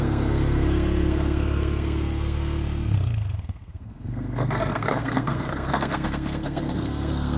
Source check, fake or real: fake